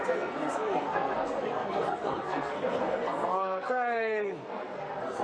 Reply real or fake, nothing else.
fake